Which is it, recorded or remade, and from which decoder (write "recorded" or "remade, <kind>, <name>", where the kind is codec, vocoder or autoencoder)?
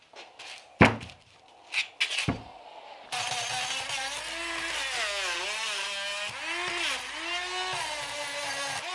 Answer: recorded